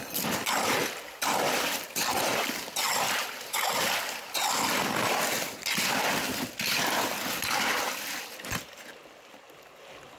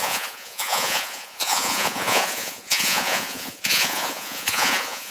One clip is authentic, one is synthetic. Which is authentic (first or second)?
first